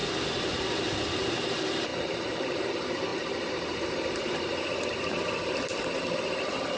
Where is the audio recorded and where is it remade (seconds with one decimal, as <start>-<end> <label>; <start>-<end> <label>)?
0.0-1.9 recorded; 1.9-2.7 remade; 2.7-3.1 recorded; 3.1-4.4 remade; 4.4-6.8 recorded